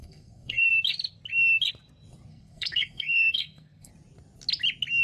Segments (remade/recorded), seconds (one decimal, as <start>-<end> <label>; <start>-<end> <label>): 0.0-0.7 remade; 0.7-2.3 recorded; 2.3-3.9 remade; 3.9-5.0 recorded